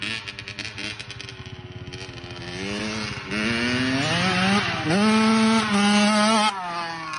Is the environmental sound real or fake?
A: real